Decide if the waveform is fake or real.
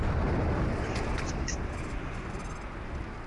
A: real